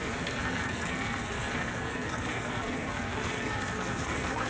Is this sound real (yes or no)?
no